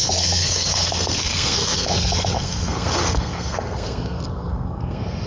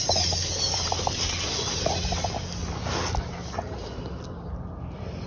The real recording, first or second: second